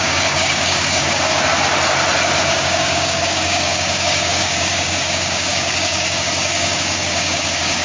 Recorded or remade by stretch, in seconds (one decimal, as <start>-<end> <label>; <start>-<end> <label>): 0.0-1.3 remade; 1.3-2.4 recorded; 2.4-7.8 remade